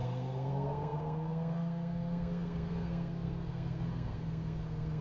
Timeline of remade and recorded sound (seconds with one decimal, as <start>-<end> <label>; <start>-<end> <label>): 0.0-5.0 remade